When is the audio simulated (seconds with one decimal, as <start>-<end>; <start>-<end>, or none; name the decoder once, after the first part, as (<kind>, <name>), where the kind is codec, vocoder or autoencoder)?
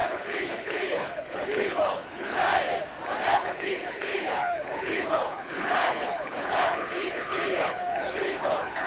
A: 0.0-2.4 (codec, HILCodec); 3.3-8.9